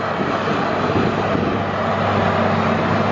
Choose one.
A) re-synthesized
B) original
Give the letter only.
B